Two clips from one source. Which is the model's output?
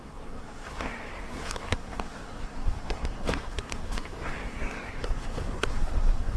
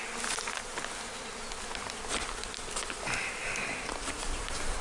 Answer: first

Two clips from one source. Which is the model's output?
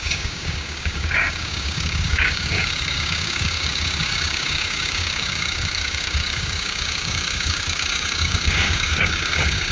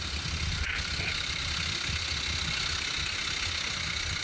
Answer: first